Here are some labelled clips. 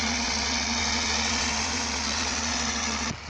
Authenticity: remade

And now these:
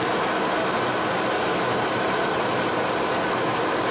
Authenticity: recorded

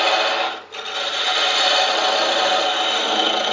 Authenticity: recorded